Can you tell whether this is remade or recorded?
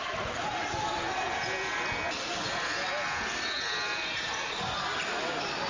recorded